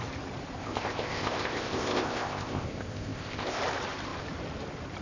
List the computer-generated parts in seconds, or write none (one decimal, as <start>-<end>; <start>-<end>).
0.6-3.6